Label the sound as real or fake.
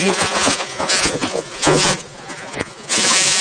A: fake